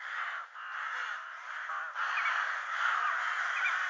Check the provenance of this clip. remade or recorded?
recorded